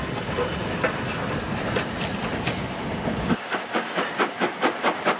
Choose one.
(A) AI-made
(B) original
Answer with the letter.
B